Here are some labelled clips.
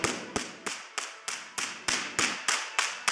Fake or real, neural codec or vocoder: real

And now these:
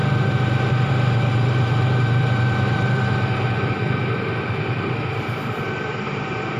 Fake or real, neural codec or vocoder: fake, vocoder, BigVGAN v2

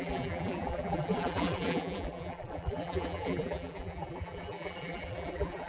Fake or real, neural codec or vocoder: fake, vocoder, BigVGAN v2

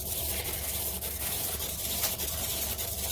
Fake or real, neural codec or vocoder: fake, vocoder, BigVGAN v2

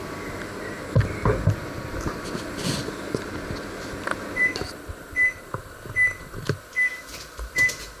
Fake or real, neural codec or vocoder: fake, vocoder, BigVGAN v2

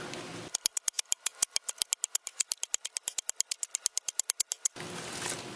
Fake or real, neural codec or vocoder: real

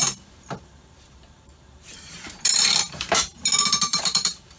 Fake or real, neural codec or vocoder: fake, vocoder, BigVGAN v2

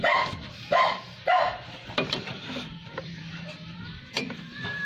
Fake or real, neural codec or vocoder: fake, vocoder, BigVGAN v2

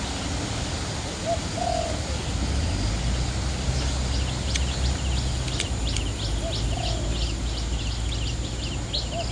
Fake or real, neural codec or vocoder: real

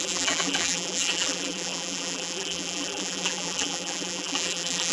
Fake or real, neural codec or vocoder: fake, vocoder, BigVGAN v2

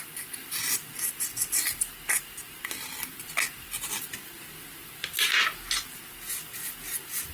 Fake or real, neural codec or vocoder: real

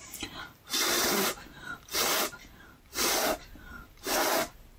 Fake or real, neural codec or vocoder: real